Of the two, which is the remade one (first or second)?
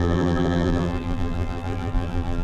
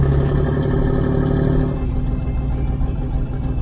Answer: first